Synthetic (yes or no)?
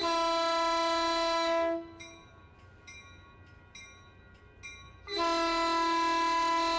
no